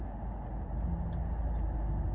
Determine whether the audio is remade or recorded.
recorded